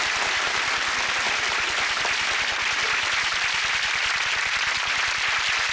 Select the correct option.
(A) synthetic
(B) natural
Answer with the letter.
B